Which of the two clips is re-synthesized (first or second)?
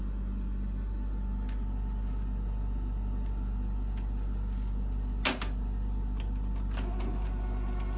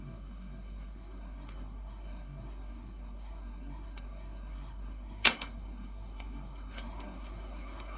second